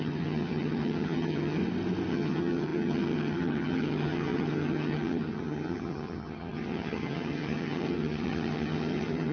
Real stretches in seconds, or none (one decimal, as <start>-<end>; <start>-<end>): 1.6-2.1